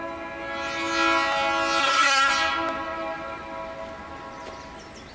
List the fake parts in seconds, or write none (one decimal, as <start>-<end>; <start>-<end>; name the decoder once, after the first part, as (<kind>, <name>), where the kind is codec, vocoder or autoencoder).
1.8-2.3 (codec, SNAC)

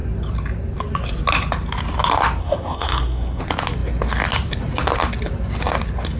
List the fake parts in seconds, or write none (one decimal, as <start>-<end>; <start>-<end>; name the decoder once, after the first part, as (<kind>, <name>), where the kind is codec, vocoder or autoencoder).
2.4-3.4 (codec, SNAC)

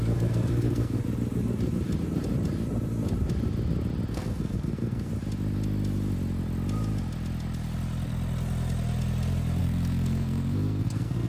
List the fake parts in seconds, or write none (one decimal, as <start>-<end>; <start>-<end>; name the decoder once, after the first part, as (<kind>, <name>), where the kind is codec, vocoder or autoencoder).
0.0-1.0 (codec, SNAC); 4.1-5.1; 9.6-11.3

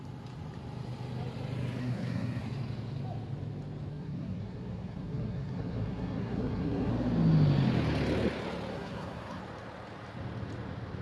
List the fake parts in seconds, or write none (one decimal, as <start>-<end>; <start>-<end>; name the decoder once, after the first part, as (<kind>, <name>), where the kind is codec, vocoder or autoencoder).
1.8-2.4 (codec, SNAC); 3.9-6.9; 8.7-9.4

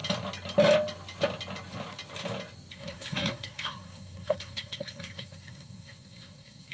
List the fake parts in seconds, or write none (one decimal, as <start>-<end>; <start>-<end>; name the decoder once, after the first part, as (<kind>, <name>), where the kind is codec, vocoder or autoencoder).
2.7-6.7 (codec, SNAC)

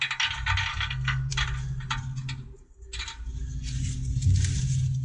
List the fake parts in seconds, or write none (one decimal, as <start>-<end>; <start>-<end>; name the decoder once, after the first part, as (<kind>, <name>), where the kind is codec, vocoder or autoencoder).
0.7-1.3 (codec, SNAC)

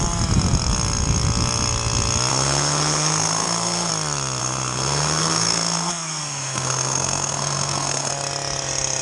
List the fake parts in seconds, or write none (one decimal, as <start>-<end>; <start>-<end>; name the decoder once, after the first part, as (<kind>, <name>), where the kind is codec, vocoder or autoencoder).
2.3-3.9 (codec, SNAC); 4.4-8.1

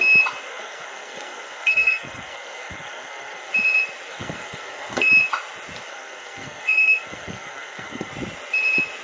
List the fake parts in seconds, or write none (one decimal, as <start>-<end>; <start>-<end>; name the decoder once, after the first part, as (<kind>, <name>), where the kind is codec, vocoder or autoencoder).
0.5-3.5 (codec, SNAC); 4.1-5.1; 5.9-8.1